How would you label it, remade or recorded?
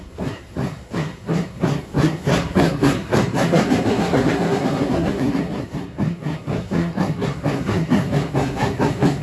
remade